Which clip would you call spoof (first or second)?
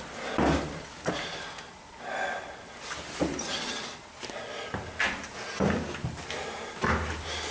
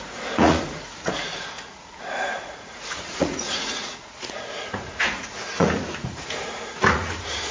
second